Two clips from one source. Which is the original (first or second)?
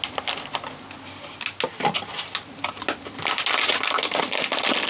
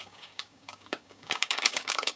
first